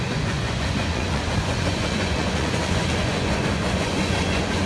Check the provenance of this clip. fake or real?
fake